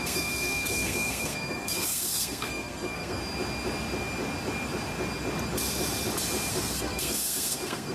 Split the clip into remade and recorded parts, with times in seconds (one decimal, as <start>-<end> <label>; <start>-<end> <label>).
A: 0.0-3.2 remade; 3.2-6.5 recorded; 6.5-7.9 remade